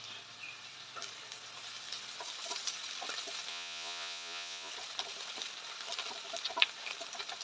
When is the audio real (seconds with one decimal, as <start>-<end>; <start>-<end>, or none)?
0.0-3.5; 4.7-7.4